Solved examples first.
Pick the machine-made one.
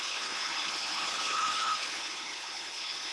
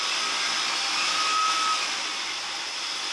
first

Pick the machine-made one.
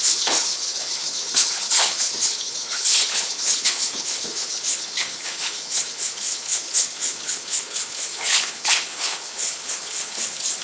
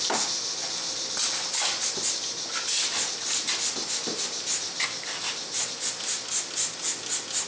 first